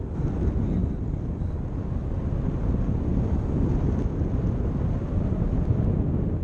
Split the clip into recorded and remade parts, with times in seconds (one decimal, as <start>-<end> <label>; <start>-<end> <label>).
0.0-0.8 recorded; 0.8-1.4 remade; 1.4-2.0 recorded; 2.0-2.6 remade; 2.6-3.1 recorded; 3.1-3.7 remade; 3.7-6.4 recorded